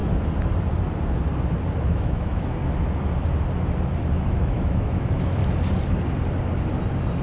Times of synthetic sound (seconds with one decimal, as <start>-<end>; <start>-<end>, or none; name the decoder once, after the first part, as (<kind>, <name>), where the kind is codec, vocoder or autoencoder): 1.8-2.6 (autoencoder, DAC-VAE); 4.1-5.4